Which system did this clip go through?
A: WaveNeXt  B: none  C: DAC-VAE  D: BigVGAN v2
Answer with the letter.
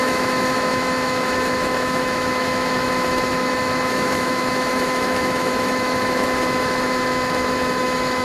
C